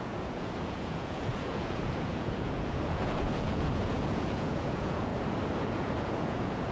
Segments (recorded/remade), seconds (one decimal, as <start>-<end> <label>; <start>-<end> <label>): 0.0-5.1 remade; 5.1-5.6 recorded; 5.6-6.7 remade